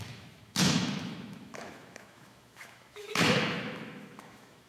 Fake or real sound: fake